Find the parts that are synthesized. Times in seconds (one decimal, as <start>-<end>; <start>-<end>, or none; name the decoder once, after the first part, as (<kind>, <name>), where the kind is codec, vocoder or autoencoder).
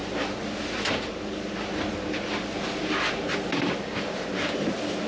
none